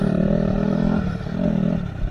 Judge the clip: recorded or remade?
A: remade